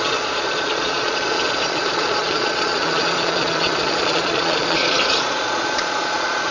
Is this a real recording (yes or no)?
no